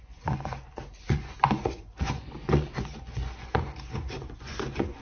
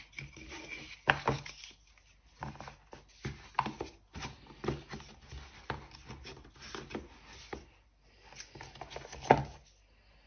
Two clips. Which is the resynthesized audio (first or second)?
first